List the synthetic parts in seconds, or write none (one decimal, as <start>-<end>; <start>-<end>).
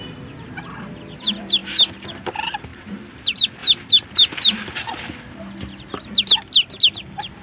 2.7-3.2